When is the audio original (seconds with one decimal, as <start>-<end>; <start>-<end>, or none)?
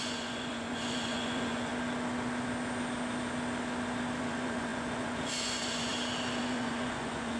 1.7-4.2; 5.9-6.4